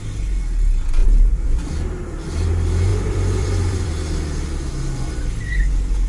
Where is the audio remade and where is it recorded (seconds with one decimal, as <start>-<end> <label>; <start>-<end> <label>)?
0.0-2.9 recorded; 2.9-3.9 remade; 3.9-4.7 recorded; 4.7-5.3 remade; 5.3-6.1 recorded